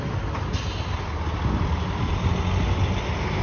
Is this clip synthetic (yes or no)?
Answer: no